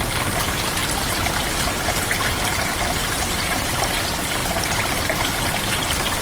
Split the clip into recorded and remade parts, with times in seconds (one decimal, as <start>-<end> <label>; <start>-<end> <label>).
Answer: 0.0-0.8 remade; 0.8-2.6 recorded; 2.6-4.4 remade; 4.4-5.6 recorded; 5.6-6.2 remade